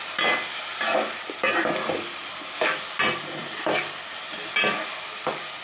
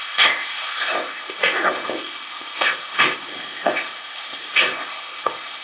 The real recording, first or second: first